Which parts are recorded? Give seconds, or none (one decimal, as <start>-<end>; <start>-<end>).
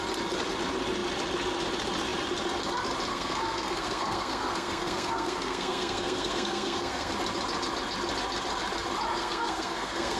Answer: 0.0-3.1; 7.1-9.1